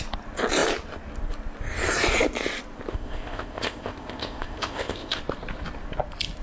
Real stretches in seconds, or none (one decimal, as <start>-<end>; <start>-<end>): 0.0-2.9; 5.2-6.4